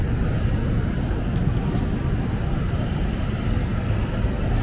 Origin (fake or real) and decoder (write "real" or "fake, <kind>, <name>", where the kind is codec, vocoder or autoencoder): real